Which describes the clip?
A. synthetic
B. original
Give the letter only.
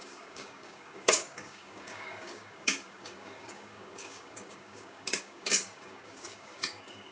A